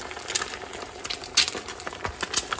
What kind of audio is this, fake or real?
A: real